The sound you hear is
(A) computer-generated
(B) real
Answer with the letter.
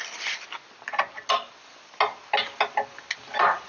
B